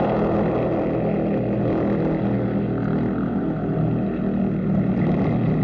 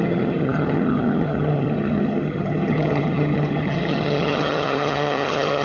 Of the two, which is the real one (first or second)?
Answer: first